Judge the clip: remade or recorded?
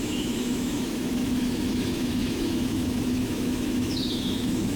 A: remade